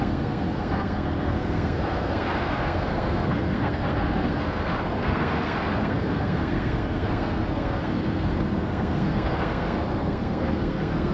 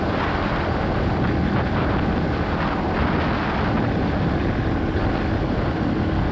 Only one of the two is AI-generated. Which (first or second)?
first